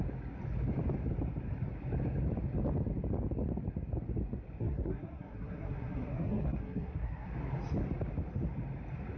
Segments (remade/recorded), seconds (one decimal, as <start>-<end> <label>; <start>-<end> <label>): 0.0-4.6 recorded; 4.6-7.3 remade; 7.3-9.2 recorded